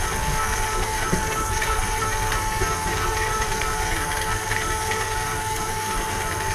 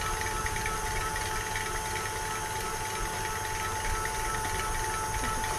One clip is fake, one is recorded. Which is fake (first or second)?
first